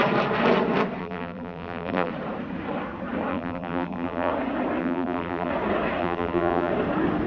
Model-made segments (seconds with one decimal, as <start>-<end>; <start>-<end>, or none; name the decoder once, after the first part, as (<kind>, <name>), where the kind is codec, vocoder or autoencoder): 1.0-2.1 (vocoder, BigVGAN v2); 3.3-4.3; 4.8-5.5; 6.0-6.7